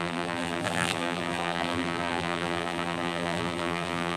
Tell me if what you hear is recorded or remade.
remade